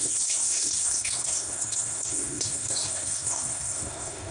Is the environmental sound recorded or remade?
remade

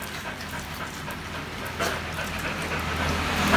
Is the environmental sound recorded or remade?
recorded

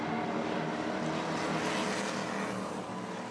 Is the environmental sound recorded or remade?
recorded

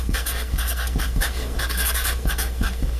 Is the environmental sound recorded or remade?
remade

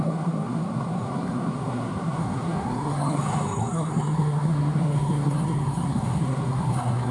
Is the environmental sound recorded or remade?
remade